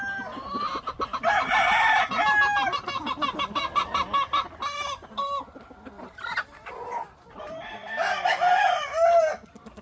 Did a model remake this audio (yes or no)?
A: no